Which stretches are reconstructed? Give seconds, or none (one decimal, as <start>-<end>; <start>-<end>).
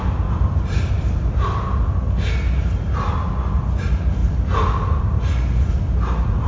none